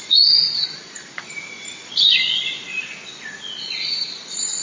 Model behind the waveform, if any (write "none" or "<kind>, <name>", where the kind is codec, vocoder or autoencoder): vocoder, Vocos